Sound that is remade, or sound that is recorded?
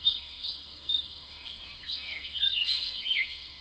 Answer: remade